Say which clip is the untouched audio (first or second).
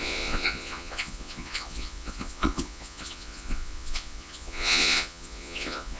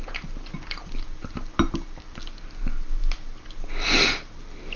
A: second